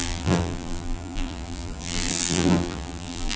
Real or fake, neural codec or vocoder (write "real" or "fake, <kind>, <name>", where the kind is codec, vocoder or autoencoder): fake, vocoder, BigVGAN v2